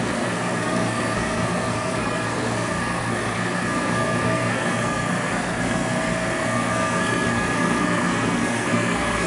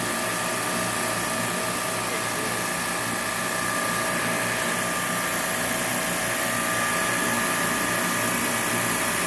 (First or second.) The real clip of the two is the second